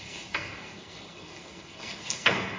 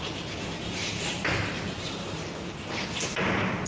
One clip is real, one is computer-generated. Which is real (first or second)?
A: second